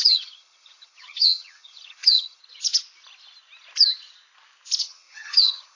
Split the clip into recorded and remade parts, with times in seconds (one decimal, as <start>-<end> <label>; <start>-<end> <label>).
0.0-2.4 remade; 2.4-4.8 recorded; 4.8-5.8 remade